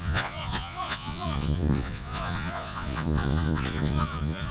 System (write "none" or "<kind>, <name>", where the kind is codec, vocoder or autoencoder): vocoder, Vocos